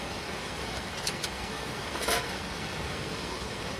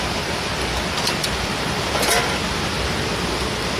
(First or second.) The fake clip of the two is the first